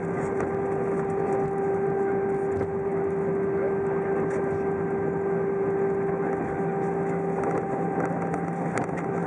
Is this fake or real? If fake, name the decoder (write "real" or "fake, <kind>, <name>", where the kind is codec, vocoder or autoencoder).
real